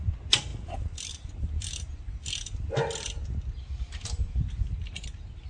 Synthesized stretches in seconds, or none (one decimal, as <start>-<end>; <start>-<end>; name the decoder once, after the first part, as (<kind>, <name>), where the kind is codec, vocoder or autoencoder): none